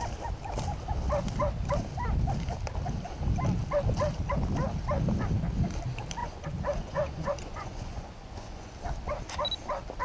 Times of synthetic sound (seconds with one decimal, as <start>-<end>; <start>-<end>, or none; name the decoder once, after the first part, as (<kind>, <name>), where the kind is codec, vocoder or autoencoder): 6.2-8.7 (vocoder, Vocos)

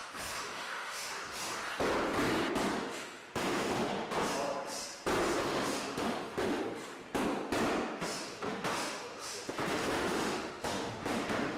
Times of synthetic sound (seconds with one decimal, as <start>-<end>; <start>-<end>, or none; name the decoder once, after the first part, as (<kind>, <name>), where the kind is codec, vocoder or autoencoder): 0.0-1.1 (autoencoder, DAC-VAE); 2.7-4.1; 5.4-6.6; 8.2-11.6